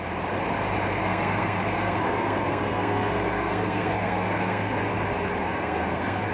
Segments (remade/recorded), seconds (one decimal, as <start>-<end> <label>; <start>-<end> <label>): 0.0-1.0 recorded; 1.0-4.8 remade; 4.8-5.4 recorded; 5.4-6.3 remade